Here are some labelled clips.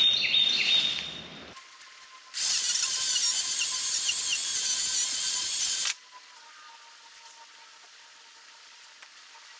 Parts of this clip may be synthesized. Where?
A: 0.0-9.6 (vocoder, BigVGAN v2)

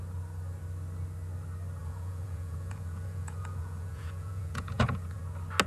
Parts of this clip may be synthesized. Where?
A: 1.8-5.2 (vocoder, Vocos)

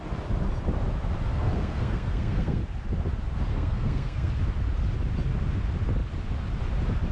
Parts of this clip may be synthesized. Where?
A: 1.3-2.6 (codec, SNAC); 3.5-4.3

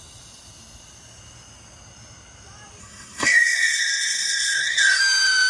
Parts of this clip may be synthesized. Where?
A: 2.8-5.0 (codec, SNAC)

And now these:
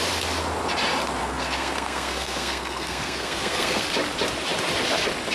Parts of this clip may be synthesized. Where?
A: 1.2-3.8 (codec, SNAC)

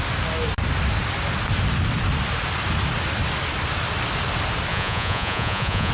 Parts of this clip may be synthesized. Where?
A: 4.7-5.9 (vocoder, Vocos)